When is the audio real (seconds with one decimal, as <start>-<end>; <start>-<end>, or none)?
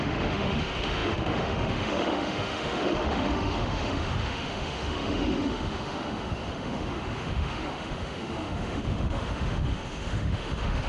none